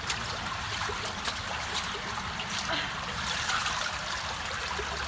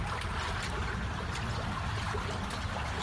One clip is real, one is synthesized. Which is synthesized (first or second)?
first